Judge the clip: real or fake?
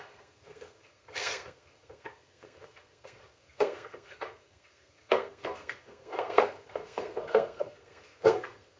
fake